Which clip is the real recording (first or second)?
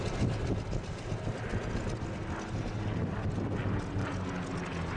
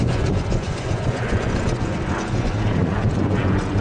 first